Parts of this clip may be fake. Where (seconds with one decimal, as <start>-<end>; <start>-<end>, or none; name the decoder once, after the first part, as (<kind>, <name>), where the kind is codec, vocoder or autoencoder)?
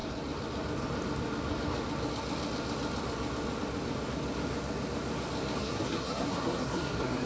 5.6-7.3 (codec, SNAC)